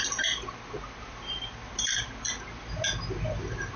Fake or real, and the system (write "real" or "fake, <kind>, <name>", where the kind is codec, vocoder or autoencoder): real